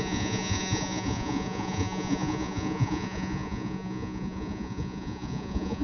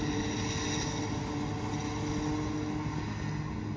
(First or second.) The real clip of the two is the second